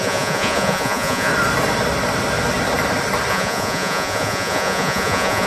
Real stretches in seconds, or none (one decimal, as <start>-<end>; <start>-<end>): 1.3-3.3